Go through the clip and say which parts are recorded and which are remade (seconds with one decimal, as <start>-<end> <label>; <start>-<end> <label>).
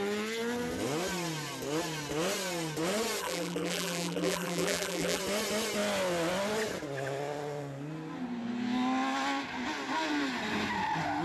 0.0-3.2 recorded; 3.2-5.2 remade; 5.2-11.2 recorded